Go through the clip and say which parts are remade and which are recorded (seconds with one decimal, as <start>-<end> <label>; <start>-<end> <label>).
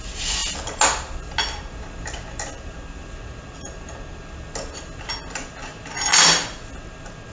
0.0-7.3 recorded